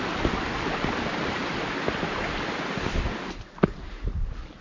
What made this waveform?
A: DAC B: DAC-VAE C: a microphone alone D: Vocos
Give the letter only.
C